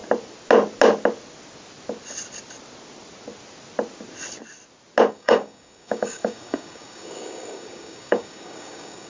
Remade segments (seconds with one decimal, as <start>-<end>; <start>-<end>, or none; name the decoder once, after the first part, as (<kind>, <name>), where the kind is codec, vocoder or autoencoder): 5.1-9.1 (codec, DAC)